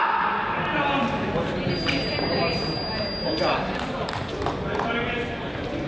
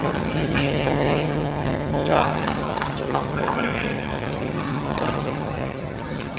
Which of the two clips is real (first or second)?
first